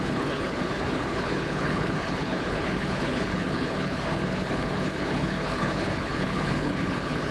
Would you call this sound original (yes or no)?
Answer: no